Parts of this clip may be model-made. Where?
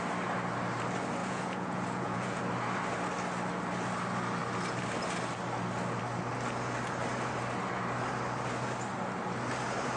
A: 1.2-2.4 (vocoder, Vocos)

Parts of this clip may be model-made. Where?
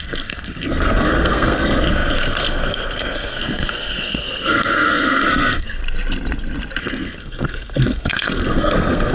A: 0.0-5.8 (codec, SNAC); 6.8-9.1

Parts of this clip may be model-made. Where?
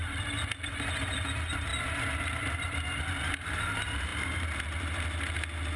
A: none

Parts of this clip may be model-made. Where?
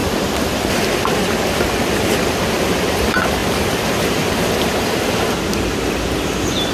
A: none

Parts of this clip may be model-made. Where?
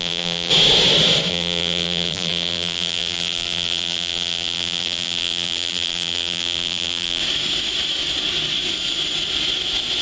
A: 0.0-0.5 (vocoder, BigVGAN v2); 1.3-7.2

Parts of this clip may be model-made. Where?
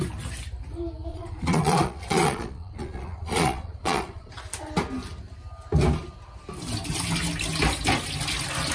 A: 1.1-4.3 (vocoder, Vocos)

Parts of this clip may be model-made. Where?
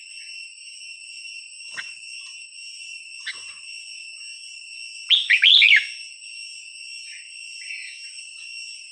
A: none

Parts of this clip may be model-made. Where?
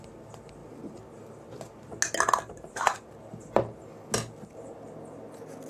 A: none